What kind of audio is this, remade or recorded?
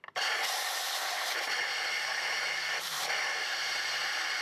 recorded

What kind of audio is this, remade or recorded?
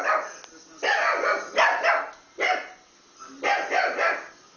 recorded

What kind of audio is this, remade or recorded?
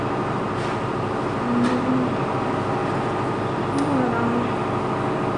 recorded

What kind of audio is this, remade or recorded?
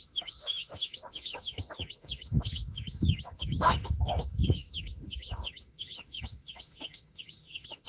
remade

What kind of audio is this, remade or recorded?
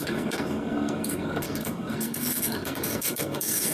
remade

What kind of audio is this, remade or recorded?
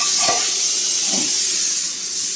remade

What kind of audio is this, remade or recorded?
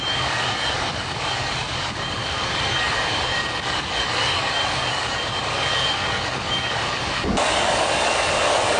remade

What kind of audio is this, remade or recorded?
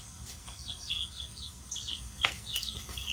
remade